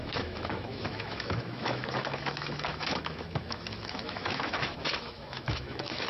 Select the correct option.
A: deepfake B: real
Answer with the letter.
A